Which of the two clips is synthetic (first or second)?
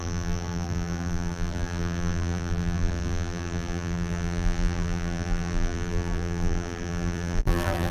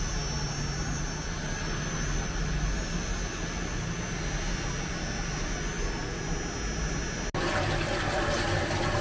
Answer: first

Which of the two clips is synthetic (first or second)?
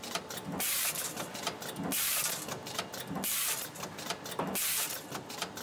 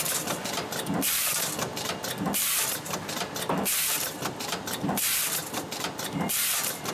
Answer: second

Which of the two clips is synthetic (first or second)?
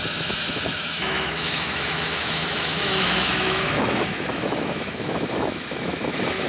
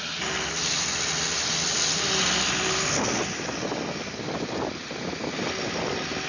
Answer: first